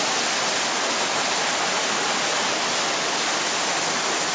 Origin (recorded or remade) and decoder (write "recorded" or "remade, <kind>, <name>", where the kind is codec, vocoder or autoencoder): recorded